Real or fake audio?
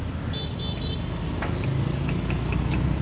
real